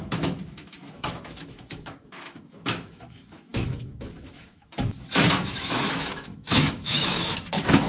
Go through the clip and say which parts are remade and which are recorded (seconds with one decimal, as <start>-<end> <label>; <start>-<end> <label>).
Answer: 0.0-7.9 remade

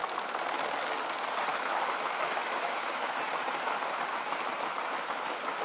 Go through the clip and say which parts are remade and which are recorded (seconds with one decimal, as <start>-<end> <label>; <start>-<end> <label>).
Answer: 0.0-1.5 recorded; 1.5-3.2 remade; 3.2-5.6 recorded

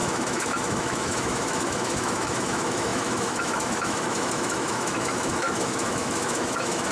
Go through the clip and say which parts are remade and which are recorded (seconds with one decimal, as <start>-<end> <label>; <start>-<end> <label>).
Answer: 0.0-6.9 remade

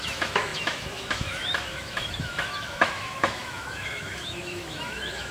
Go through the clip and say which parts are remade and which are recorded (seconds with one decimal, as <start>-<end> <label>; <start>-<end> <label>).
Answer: 0.0-5.3 remade